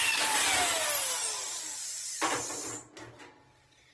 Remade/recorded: recorded